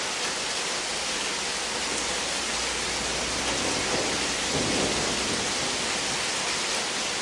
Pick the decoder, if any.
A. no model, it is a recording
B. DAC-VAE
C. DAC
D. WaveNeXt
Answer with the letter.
A